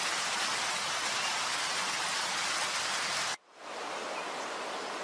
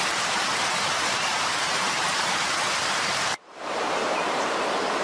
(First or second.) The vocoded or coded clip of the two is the second